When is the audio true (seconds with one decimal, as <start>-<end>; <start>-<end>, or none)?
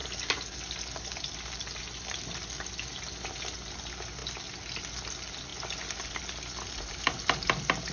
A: 0.0-7.9